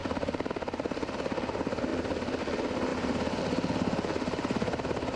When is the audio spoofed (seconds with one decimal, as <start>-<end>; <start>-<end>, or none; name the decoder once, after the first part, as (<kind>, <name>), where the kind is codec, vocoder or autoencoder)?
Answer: 0.0-0.5 (vocoder, BigVGAN v2); 2.9-3.4

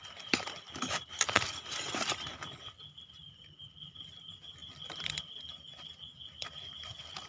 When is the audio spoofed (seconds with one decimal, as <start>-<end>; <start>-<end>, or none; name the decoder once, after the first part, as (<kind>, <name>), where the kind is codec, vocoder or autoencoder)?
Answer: 0.0-2.3 (vocoder, BigVGAN v2); 3.2-7.3

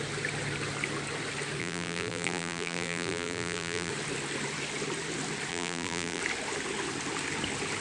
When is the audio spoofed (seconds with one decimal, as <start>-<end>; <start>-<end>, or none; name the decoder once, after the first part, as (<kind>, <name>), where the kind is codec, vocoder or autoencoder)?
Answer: 1.6-3.9 (vocoder, BigVGAN v2); 5.5-6.2